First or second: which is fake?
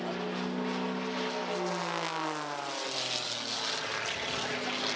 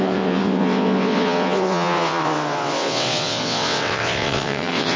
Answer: second